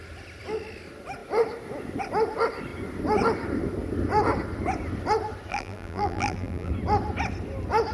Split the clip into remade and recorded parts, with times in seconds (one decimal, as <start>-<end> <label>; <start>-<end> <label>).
0.0-5.5 recorded; 5.5-6.7 remade; 6.7-7.9 recorded